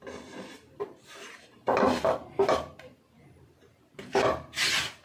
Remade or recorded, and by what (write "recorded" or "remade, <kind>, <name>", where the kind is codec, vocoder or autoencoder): remade, vocoder, BigVGAN v2